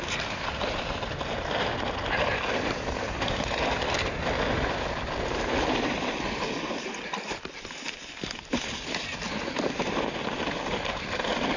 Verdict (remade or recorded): recorded